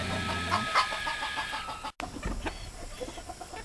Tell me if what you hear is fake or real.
real